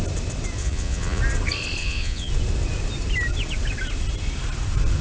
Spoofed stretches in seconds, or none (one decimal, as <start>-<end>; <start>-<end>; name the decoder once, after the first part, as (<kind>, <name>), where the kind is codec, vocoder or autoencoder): 0.6-1.2 (vocoder, Vocos); 1.8-2.3